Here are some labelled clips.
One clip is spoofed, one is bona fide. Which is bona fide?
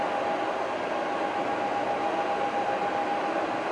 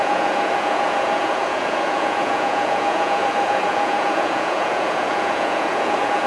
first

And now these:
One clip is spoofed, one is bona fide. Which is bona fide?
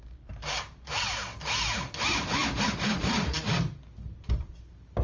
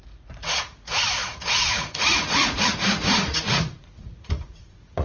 first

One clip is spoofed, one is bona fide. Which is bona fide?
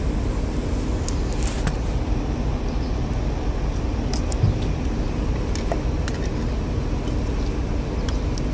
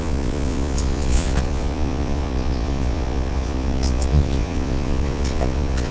first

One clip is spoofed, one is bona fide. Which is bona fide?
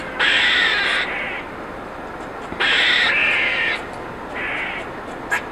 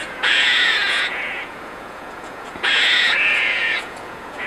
first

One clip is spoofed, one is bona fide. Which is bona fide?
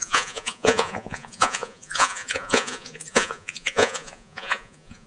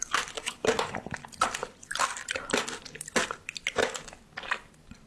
second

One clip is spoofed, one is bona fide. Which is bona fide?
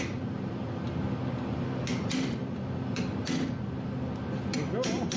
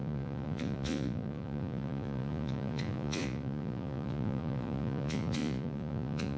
first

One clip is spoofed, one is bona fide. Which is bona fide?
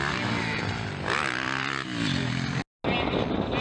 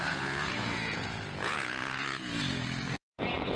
first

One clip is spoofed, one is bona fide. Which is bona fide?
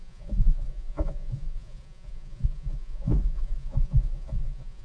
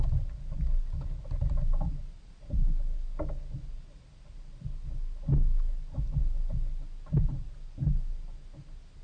second